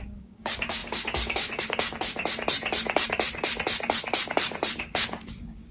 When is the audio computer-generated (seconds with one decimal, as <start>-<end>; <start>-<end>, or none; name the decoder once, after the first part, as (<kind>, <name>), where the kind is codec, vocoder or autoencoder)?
0.0-2.1 (codec, DAC); 4.7-5.7